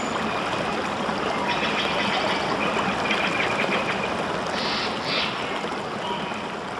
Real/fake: real